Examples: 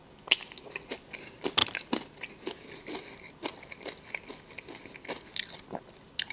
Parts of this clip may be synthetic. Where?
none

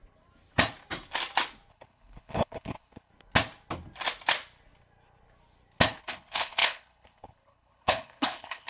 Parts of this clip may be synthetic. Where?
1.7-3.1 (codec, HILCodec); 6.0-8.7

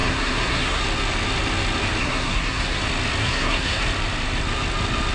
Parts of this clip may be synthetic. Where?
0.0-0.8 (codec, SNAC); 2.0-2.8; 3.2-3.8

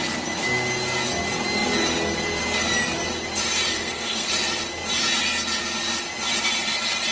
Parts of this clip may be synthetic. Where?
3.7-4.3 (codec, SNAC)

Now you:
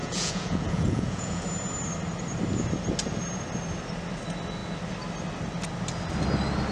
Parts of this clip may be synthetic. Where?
0.0-1.4 (vocoder, Vocos)